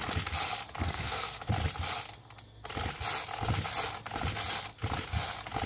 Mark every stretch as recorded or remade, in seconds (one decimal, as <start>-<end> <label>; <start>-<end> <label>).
0.0-0.8 recorded; 0.8-1.4 remade; 1.4-5.7 recorded

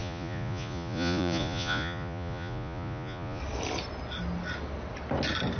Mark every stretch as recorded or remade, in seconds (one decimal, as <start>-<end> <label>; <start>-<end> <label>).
0.0-3.4 remade; 3.4-5.6 recorded